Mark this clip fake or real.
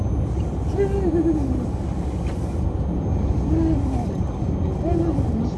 real